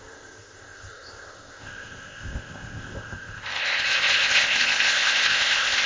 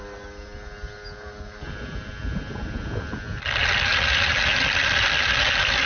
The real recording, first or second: second